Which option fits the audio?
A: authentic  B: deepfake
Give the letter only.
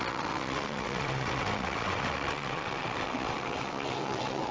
B